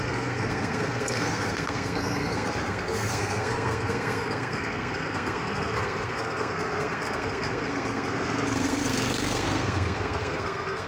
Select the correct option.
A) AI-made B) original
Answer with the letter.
A